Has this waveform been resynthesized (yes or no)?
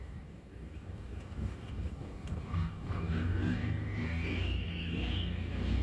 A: yes